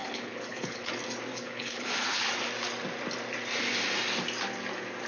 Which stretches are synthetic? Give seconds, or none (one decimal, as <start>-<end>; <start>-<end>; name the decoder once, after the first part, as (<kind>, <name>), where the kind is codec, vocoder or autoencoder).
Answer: 0.0-0.9 (codec, HILCodec); 1.3-2.3

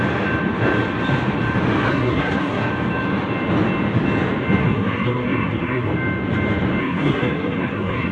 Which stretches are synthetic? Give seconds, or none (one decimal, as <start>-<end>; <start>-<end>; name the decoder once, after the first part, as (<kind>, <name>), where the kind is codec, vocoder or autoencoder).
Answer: 1.9-2.7 (codec, SNAC); 4.6-5.9; 6.8-8.1

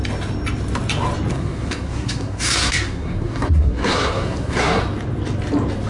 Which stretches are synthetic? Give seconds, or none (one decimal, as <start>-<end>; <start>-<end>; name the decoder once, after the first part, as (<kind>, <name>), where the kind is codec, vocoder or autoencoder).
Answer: 1.3-4.8 (codec, SNAC)